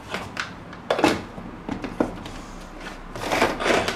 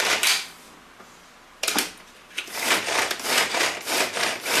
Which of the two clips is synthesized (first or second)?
second